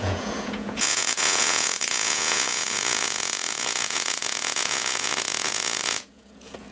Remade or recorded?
remade